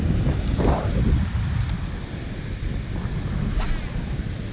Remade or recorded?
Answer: recorded